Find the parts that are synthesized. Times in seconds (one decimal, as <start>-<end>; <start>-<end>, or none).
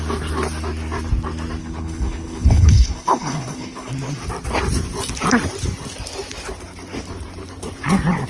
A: 1.6-3.9